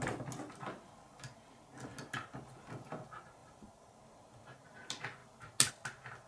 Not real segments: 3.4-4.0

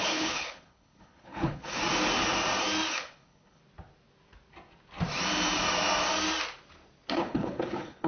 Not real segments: 0.0-1.8; 2.9-3.6; 7.1-8.1

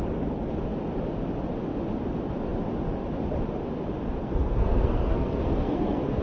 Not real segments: 4.2-6.2

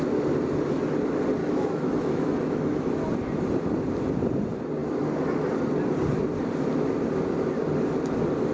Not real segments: 1.4-3.1

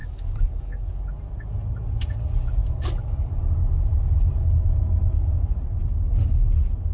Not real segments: 0.0-1.0

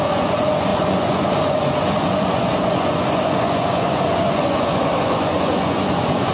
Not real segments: 0.0-6.3

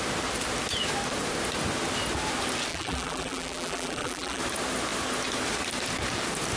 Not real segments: 2.7-4.4

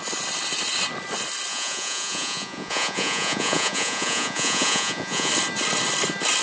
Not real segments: 1.5-5.3